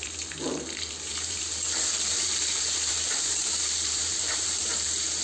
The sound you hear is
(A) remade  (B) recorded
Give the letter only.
A